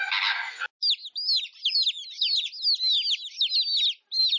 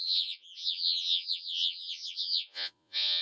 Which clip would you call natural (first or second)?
first